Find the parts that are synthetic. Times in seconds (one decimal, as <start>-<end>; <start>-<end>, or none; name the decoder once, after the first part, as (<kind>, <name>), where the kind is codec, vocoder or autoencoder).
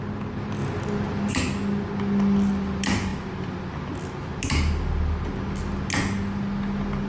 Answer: none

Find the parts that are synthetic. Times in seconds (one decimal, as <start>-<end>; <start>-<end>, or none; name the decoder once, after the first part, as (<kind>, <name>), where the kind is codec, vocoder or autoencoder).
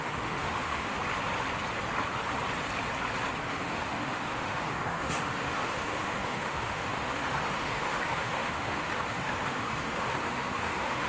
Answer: 0.0-1.0 (autoencoder, DAC-VAE); 3.5-11.1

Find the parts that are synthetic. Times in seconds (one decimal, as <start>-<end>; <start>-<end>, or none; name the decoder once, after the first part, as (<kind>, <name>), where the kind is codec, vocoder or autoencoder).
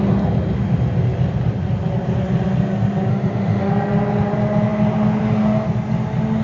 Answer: 3.1-3.7 (autoencoder, DAC-VAE)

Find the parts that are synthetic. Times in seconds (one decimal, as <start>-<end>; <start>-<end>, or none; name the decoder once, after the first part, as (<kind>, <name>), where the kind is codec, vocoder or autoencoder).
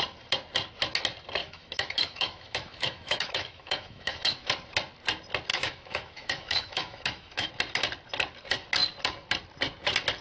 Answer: 1.4-4.5 (autoencoder, DAC-VAE); 5.5-7.5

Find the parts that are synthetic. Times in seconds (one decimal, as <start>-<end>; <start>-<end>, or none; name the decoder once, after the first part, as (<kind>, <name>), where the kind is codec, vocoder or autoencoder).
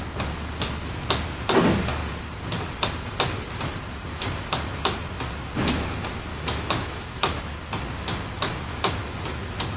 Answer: 6.3-7.4 (autoencoder, DAC-VAE)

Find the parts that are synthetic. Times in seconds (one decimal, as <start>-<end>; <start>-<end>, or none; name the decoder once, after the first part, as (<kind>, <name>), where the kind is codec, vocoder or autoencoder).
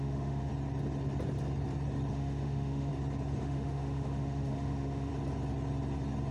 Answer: 0.0-0.5 (autoencoder, DAC-VAE); 2.1-2.9; 3.4-5.1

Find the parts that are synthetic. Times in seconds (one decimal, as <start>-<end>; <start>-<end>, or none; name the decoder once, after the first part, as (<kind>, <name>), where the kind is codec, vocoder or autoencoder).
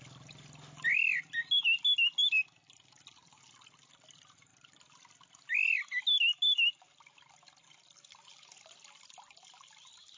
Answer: none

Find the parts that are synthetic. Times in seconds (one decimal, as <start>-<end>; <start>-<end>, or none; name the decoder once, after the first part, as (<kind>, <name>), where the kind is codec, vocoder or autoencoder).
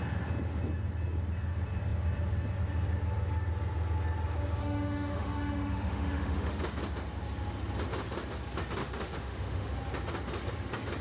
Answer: 4.6-6.6 (autoencoder, DAC-VAE); 8.8-9.7